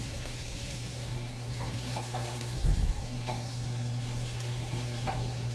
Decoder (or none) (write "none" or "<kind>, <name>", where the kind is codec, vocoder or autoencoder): codec, SNAC